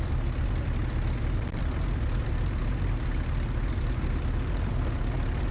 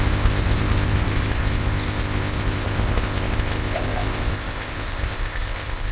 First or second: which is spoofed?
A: second